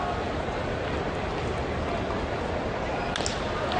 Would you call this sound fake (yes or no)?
no